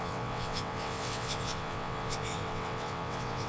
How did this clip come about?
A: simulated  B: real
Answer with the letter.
A